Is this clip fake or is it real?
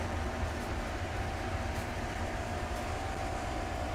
real